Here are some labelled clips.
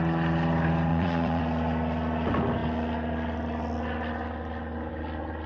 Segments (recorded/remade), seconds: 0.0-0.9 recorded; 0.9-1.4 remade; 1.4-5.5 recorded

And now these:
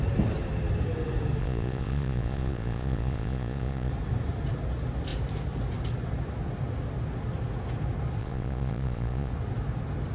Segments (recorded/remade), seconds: 0.0-1.4 recorded; 1.4-3.9 remade; 3.9-8.2 recorded; 8.2-9.3 remade; 9.3-10.1 recorded

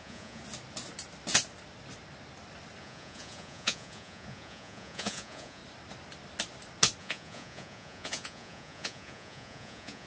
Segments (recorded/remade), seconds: 0.0-0.4 remade; 0.4-2.8 recorded; 2.8-5.6 remade; 5.6-7.0 recorded; 7.0-10.1 remade

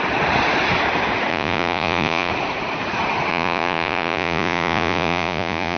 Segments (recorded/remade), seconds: 0.0-1.3 recorded; 1.3-2.3 remade; 2.3-3.3 recorded; 3.3-5.8 remade

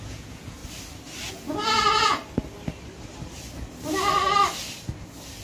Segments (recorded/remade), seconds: 0.0-0.6 remade; 0.6-1.3 recorded; 1.3-2.2 remade; 2.2-5.4 recorded

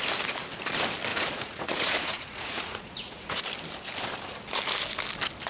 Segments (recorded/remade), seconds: 0.0-1.1 recorded; 1.1-3.4 remade; 3.4-5.5 recorded

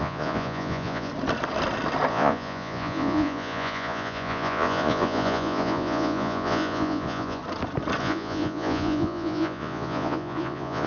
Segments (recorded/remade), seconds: 0.0-1.1 remade; 1.1-2.1 recorded; 2.1-7.4 remade; 7.4-8.0 recorded; 8.0-10.9 remade